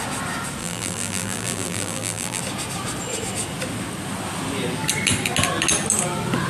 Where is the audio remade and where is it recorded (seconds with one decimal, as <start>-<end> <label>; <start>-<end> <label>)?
0.0-0.6 recorded; 0.6-2.4 remade; 2.4-6.5 recorded